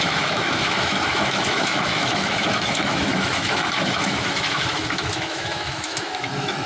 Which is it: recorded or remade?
remade